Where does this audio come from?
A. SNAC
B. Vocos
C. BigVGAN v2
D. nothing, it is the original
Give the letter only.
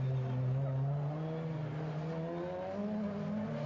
D